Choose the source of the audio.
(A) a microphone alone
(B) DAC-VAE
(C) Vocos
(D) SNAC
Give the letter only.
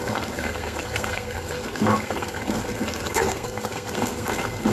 D